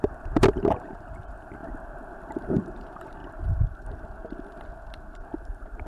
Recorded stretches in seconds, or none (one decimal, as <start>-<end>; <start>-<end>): 1.6-2.5; 3.2-5.9